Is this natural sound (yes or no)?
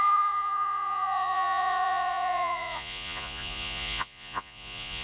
no